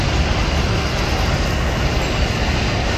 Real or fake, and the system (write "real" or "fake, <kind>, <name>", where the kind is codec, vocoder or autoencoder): real